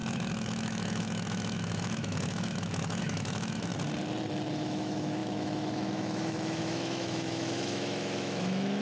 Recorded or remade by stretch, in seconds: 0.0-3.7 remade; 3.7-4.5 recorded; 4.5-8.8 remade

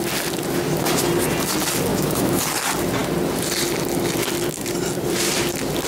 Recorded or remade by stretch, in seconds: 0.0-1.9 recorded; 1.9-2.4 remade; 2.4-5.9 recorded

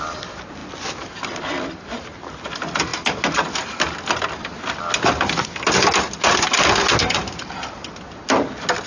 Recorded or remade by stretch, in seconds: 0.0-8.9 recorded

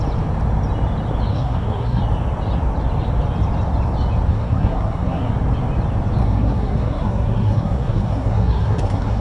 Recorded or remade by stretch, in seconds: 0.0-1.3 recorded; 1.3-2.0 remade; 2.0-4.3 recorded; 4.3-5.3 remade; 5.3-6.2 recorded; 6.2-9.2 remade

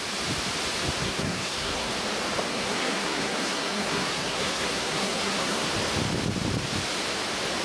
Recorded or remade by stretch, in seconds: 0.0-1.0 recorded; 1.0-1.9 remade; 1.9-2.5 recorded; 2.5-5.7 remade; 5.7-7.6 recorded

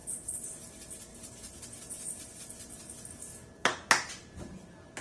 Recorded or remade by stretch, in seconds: 0.0-5.0 recorded

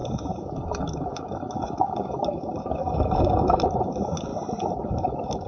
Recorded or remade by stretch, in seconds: 0.0-4.3 remade; 4.3-4.9 recorded; 4.9-5.5 remade

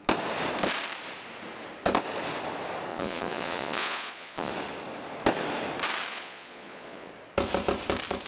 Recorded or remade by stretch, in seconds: 0.0-2.9 recorded; 2.9-4.5 remade; 4.5-6.1 recorded; 6.1-7.1 remade; 7.1-8.3 recorded